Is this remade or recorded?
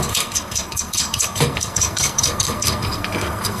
remade